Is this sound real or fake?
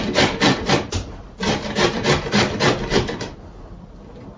fake